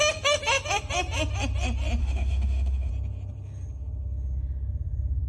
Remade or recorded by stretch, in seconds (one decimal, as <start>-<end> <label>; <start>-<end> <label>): 0.0-2.0 recorded; 2.0-2.9 remade; 2.9-5.3 recorded